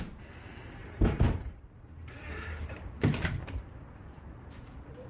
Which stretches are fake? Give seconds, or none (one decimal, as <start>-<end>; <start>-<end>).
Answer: 0.8-2.7